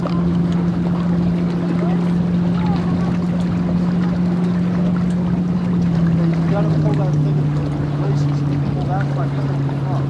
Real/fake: real